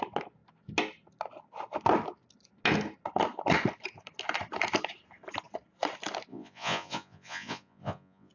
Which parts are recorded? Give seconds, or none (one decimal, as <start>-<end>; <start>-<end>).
0.0-6.3